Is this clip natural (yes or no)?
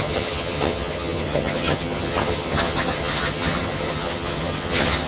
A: no